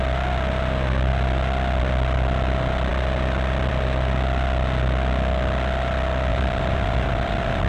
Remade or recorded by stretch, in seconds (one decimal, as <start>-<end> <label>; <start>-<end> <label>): 0.0-6.3 recorded; 6.3-7.7 remade